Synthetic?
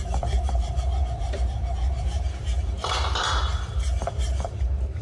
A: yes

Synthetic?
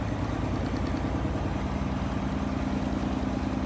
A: no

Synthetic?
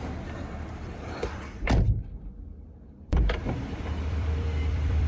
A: yes